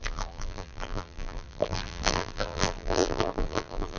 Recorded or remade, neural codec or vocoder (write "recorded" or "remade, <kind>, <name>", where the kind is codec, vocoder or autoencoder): remade, vocoder, BigVGAN v2